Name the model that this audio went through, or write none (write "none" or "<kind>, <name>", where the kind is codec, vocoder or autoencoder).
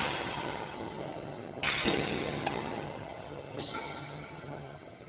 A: vocoder, HiFi-GAN